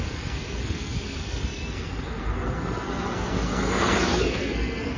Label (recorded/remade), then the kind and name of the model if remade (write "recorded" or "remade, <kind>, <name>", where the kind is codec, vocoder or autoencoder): remade, codec, SNAC